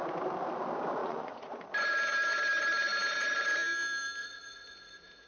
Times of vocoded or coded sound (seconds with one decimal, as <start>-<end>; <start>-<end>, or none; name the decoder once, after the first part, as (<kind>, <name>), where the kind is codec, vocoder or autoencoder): 1.0-1.6 (vocoder, Vocos); 4.2-5.3